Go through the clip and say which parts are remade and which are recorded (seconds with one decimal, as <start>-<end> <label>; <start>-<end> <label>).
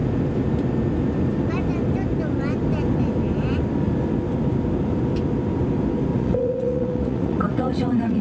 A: 0.0-6.1 recorded; 6.1-8.2 remade